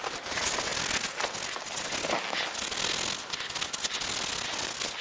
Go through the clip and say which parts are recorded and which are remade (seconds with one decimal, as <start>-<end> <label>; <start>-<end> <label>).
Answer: 0.0-5.0 recorded